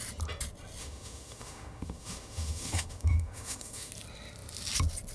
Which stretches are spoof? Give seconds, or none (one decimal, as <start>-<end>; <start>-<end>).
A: 0.8-3.9